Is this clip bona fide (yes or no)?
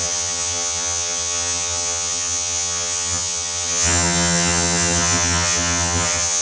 no